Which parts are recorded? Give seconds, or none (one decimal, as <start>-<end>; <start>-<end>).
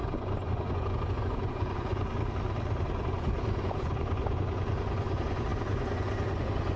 2.1-3.0